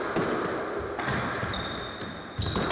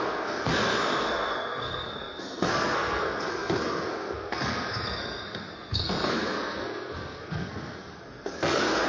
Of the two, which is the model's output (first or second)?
second